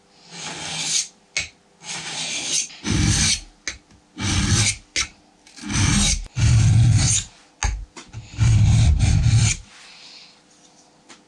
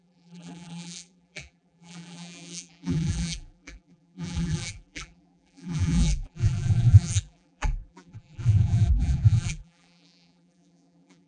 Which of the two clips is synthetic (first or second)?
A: second